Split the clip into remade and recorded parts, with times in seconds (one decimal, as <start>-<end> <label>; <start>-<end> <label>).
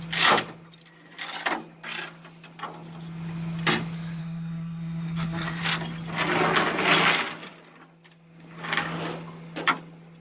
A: 0.0-4.2 recorded; 4.2-5.6 remade; 5.6-10.2 recorded